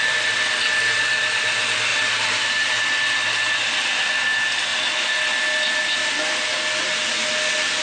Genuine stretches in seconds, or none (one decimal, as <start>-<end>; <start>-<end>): 0.0-1.9; 2.8-7.8